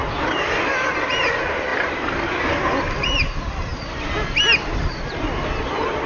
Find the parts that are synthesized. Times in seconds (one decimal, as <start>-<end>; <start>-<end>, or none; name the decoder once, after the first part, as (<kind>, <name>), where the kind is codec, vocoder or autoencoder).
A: 1.1-3.7 (vocoder, BigVGAN v2)